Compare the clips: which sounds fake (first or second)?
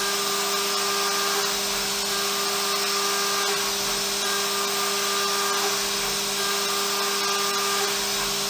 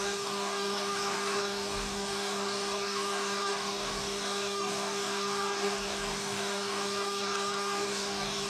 second